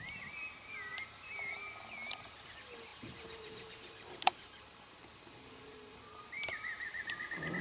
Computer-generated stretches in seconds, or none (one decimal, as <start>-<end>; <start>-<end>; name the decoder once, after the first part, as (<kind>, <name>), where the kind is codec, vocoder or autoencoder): 0.9-1.5 (vocoder, BigVGAN v2); 2.9-7.6